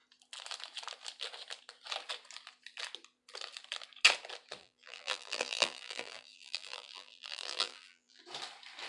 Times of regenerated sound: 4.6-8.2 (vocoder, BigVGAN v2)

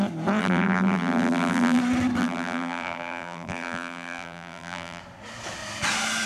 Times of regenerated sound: 0.4-1.8 (vocoder, BigVGAN v2); 2.2-5.0

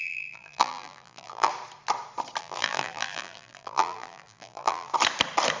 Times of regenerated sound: 0.0-1.5 (vocoder, BigVGAN v2); 2.4-4.9